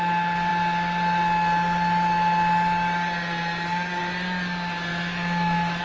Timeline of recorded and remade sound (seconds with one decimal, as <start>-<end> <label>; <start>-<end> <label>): 0.0-4.9 recorded; 4.9-5.8 remade